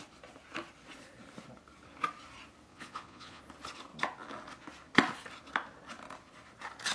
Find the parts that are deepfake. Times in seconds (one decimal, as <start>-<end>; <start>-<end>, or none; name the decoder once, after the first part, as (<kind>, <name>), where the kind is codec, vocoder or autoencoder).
2.7-3.4 (vocoder, Vocos)